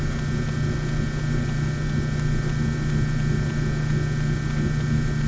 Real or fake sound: real